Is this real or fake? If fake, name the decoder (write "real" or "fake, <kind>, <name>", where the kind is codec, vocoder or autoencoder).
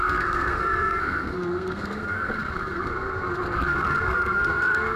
fake, codec, SNAC